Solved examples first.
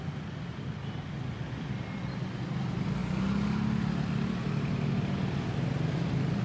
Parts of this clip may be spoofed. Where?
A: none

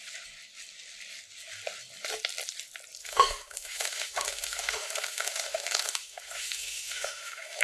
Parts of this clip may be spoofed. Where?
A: 3.0-7.6 (autoencoder, DAC-VAE)

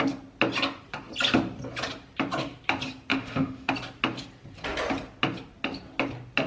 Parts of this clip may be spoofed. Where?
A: 3.1-3.7 (autoencoder, DAC-VAE)

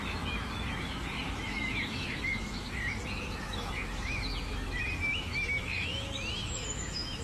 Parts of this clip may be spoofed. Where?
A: 0.0-7.2 (autoencoder, DAC-VAE)